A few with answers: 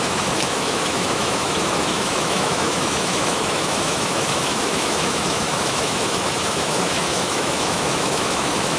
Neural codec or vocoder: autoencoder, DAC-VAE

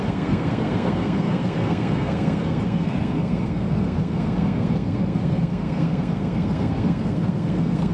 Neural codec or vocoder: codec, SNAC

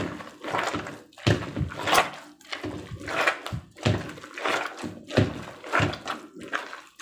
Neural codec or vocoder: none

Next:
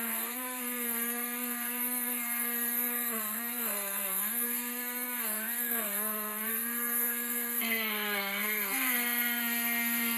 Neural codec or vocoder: codec, SNAC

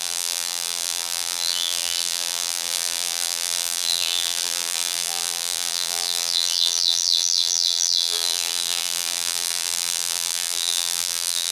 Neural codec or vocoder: vocoder, BigVGAN v2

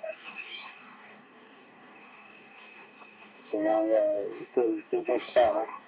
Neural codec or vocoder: codec, DAC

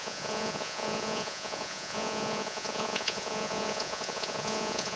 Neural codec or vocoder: vocoder, Vocos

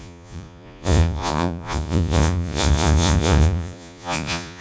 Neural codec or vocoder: vocoder, Vocos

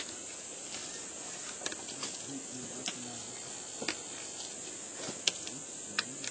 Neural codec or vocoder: none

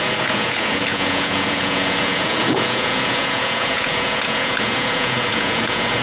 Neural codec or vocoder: vocoder, Vocos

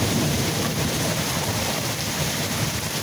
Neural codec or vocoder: vocoder, BigVGAN v2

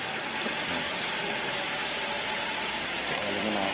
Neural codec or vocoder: none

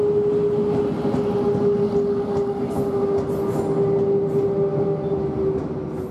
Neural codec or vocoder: none